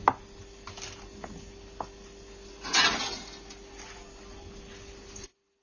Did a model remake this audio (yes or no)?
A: no